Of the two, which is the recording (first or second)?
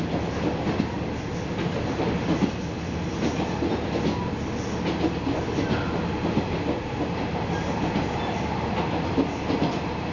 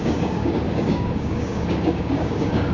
first